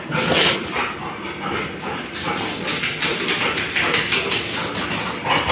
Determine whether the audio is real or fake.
real